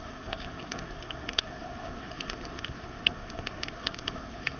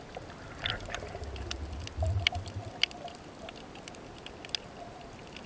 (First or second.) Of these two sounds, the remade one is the first